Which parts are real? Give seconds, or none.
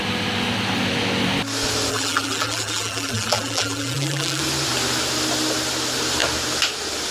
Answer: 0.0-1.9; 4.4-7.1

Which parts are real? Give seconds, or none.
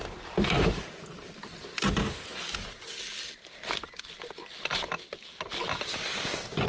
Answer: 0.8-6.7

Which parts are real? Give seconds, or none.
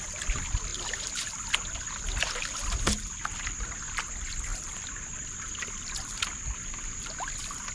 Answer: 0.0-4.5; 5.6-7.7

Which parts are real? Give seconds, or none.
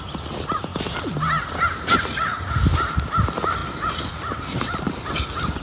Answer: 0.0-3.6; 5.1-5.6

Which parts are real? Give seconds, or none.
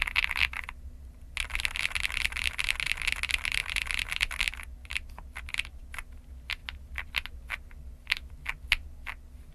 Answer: 0.0-3.6; 5.9-6.6; 7.1-9.5